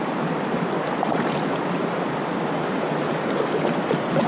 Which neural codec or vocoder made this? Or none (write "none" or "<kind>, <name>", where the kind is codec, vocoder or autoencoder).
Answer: none